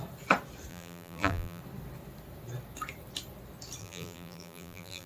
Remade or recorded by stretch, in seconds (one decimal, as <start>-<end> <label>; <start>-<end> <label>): 0.0-0.7 recorded; 0.7-1.6 remade; 1.6-3.8 recorded; 3.8-5.1 remade